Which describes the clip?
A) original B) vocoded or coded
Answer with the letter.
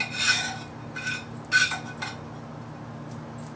A